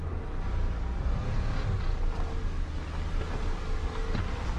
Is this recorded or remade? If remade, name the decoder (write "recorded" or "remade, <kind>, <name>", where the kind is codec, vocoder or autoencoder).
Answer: recorded